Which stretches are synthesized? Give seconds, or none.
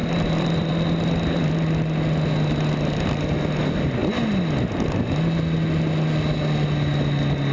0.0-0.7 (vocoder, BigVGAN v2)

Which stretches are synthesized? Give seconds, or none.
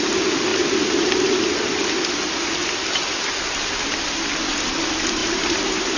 5.2-6.0 (vocoder, BigVGAN v2)